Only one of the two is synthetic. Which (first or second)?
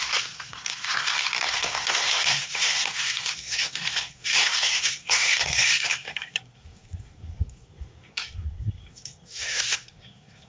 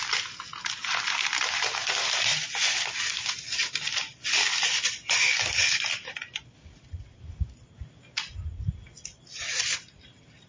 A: first